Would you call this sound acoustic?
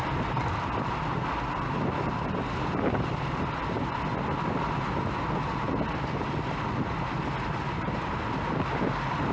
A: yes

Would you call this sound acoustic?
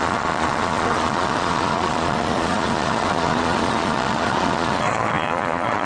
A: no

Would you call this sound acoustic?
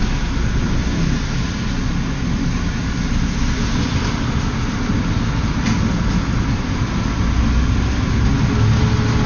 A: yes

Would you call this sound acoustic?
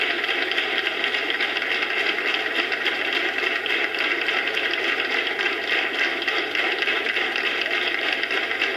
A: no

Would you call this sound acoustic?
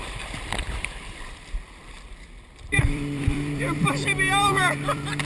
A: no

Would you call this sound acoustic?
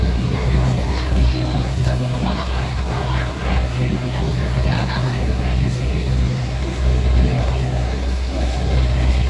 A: no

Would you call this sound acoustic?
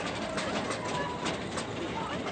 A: yes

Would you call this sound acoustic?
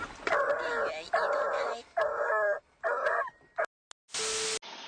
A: yes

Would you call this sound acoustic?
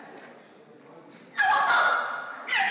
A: yes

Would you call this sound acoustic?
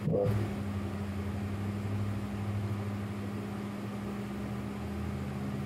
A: yes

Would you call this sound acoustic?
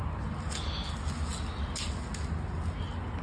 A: yes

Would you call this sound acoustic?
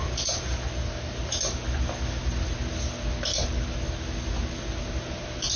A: yes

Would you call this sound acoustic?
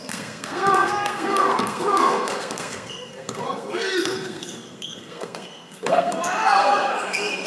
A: no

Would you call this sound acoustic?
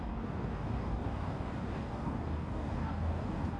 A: no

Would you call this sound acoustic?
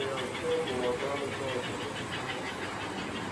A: yes